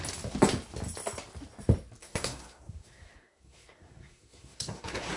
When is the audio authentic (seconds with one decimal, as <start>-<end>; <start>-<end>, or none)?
0.0-2.0